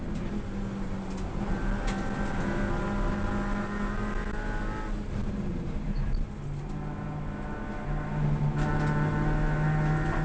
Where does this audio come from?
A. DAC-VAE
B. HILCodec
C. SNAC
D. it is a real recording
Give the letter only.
D